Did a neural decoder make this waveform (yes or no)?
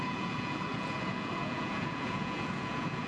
yes